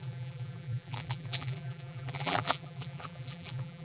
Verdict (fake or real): fake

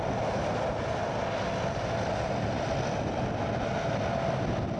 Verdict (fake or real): real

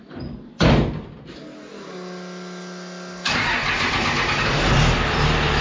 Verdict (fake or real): real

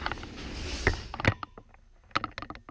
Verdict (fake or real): real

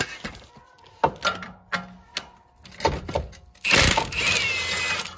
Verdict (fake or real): real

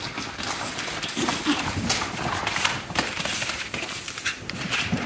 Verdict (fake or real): real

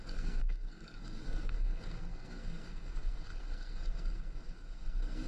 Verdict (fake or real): fake